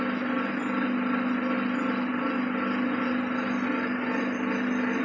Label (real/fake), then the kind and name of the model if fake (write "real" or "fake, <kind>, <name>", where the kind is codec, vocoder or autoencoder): real